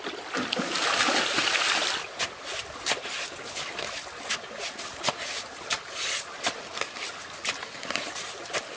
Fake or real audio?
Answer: fake